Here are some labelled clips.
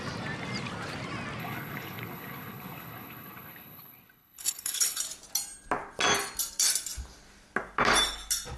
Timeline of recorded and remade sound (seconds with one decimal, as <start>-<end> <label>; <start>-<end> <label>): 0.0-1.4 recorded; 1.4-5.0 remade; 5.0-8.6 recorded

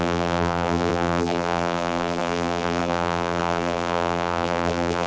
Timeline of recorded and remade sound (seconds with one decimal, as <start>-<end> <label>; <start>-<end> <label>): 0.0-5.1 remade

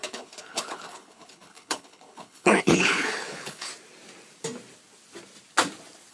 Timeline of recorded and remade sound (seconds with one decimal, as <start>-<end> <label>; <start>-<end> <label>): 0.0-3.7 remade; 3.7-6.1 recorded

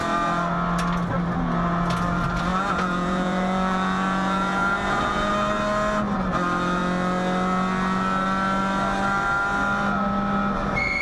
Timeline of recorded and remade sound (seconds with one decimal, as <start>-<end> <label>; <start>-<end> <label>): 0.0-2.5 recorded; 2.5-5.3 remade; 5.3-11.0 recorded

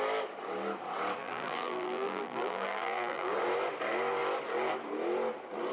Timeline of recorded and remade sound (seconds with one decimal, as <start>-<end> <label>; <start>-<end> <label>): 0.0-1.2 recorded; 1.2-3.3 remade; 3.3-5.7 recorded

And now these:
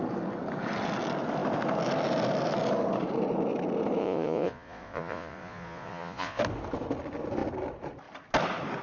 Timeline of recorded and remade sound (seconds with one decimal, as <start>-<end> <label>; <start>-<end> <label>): 0.0-4.0 recorded; 4.0-6.4 remade; 6.4-8.8 recorded

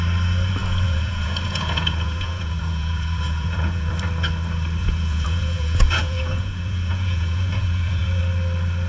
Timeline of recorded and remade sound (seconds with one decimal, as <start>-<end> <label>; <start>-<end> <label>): 0.0-0.6 recorded; 0.6-3.9 remade; 3.9-4.8 recorded; 4.8-8.2 remade; 8.2-8.9 recorded

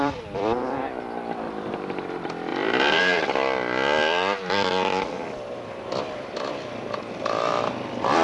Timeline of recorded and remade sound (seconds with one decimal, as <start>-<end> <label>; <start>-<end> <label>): 0.0-8.2 remade